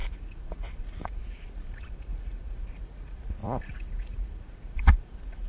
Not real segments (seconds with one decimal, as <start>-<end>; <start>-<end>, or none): 0.0-5.5